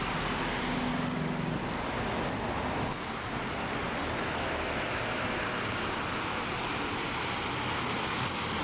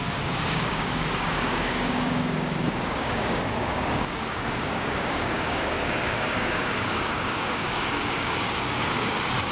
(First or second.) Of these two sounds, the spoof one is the second